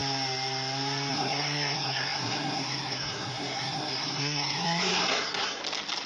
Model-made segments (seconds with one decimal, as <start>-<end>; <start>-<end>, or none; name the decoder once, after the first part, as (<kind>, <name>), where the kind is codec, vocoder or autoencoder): 1.1-5.6 (codec, SNAC)